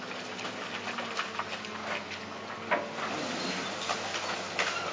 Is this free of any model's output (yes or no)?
yes